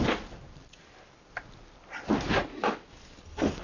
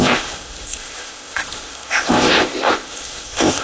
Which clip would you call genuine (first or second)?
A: first